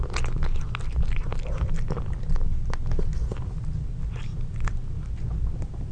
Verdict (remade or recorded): recorded